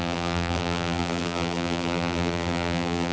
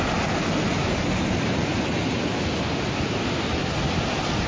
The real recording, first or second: second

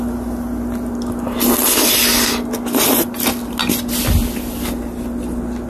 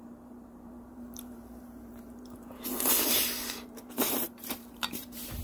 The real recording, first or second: first